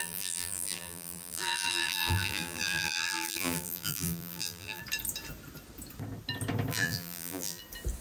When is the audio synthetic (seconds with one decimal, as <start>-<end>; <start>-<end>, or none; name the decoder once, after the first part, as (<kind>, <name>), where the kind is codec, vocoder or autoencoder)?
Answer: 0.0-4.8 (vocoder, BigVGAN v2); 6.7-7.6